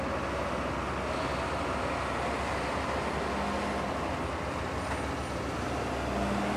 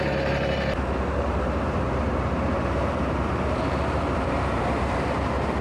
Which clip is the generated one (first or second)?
second